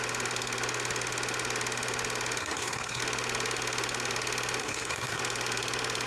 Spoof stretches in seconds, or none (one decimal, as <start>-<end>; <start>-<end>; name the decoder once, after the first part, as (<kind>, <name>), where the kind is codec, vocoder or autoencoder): 2.4-3.0 (codec, SNAC); 4.6-5.2